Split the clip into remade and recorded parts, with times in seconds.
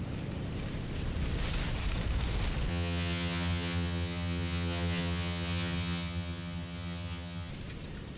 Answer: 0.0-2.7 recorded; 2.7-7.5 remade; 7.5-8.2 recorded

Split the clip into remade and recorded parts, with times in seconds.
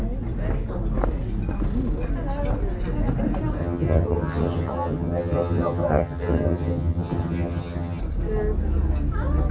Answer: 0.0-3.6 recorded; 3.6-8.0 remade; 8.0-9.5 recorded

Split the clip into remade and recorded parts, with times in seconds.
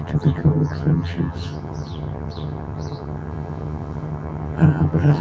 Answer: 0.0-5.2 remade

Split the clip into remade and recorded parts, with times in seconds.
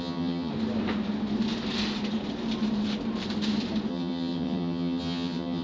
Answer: 0.0-0.5 remade; 0.5-3.9 recorded; 3.9-5.6 remade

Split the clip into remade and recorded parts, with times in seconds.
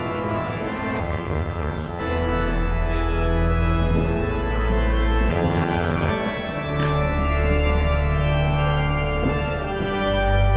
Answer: 0.0-1.0 recorded; 1.0-2.0 remade; 2.0-5.3 recorded; 5.3-6.1 remade; 6.1-10.6 recorded